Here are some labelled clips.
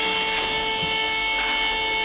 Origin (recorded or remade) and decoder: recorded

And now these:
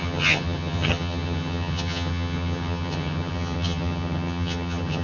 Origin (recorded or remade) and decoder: remade, vocoder, HiFi-GAN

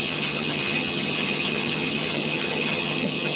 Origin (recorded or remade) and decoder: remade, vocoder, HiFi-GAN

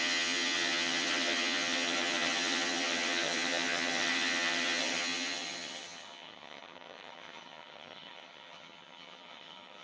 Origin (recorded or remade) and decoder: remade, vocoder, HiFi-GAN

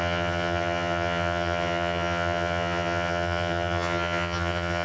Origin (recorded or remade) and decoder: remade, vocoder, HiFi-GAN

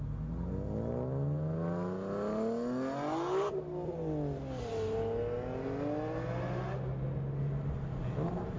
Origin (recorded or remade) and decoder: recorded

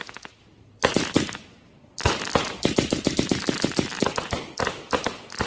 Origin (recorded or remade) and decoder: recorded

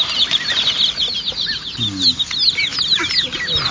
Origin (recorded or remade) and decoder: recorded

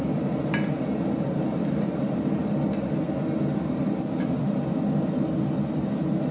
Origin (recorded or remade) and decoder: recorded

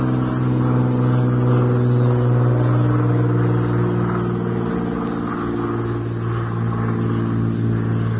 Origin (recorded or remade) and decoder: recorded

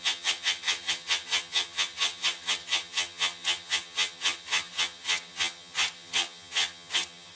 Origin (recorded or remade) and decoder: remade, vocoder, HiFi-GAN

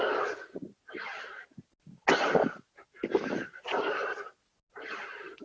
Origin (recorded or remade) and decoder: recorded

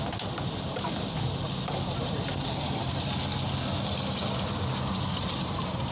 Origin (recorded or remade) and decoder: recorded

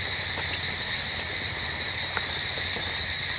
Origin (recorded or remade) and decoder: recorded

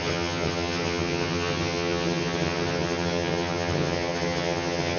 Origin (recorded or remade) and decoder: remade, vocoder, HiFi-GAN